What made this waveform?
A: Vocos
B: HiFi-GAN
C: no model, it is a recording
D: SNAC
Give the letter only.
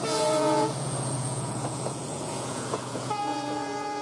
A